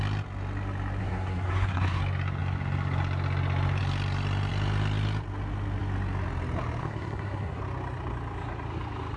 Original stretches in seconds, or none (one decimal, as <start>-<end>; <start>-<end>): 0.0-1.0; 2.0-6.8; 7.6-9.2